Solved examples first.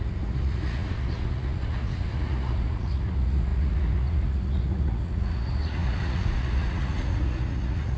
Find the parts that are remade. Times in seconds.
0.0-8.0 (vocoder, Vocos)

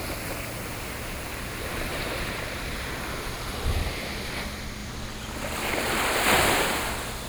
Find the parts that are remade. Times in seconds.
1.9-3.0 (vocoder, BigVGAN v2)